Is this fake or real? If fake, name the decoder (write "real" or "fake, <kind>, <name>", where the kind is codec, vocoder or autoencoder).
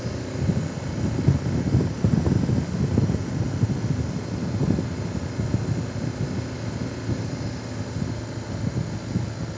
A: real